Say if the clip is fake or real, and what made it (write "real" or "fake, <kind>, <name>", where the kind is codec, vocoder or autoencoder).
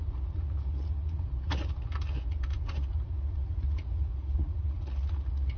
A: fake, vocoder, Vocos